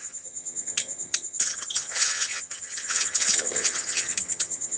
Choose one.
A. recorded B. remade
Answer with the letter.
B